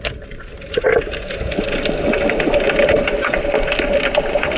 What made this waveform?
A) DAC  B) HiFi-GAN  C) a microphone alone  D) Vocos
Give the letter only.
C